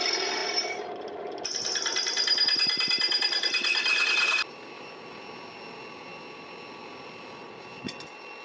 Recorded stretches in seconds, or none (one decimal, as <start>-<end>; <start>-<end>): 0.0-8.4

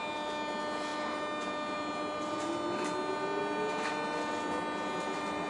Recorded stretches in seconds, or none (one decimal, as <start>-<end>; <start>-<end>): 0.0-5.5

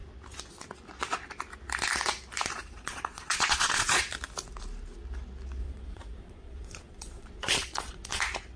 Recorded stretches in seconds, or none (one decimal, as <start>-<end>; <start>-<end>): 0.0-2.6; 4.0-5.6; 8.2-8.6

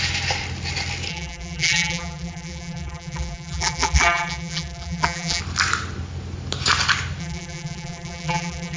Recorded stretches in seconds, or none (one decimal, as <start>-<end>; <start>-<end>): 0.0-1.1; 5.4-7.2

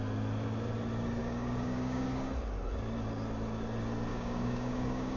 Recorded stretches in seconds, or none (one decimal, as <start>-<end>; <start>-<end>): 0.0-1.2; 2.3-4.1

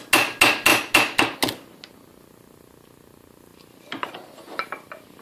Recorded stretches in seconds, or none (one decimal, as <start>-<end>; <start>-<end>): 0.0-5.2

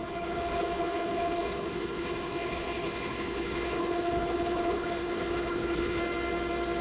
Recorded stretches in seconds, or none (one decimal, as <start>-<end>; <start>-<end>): 6.0-6.8

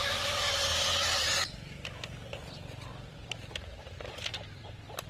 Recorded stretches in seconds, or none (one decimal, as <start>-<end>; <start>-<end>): 0.7-3.8